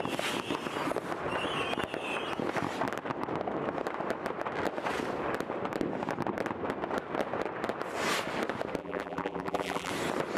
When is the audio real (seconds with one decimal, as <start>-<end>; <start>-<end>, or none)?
0.0-8.8; 9.9-10.4